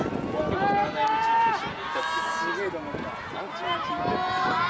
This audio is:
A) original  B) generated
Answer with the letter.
A